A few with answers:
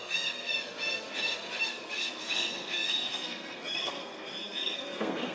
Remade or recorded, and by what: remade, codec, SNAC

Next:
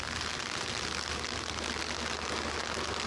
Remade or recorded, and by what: recorded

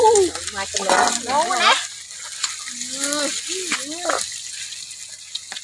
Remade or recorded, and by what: recorded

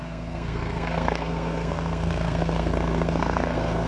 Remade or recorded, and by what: remade, codec, SNAC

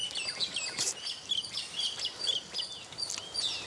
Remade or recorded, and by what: recorded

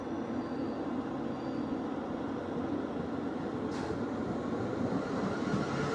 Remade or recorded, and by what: recorded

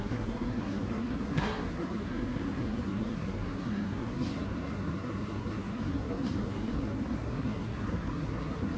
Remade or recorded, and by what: remade, codec, SNAC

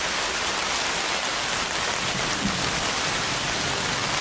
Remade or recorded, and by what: recorded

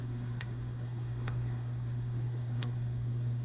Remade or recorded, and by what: remade, codec, SNAC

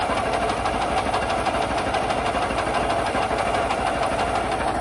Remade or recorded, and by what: recorded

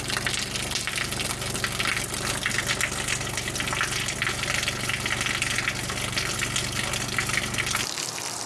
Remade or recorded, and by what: recorded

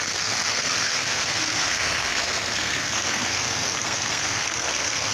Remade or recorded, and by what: remade, codec, SNAC